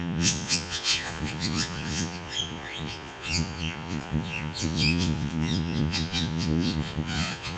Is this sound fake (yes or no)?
yes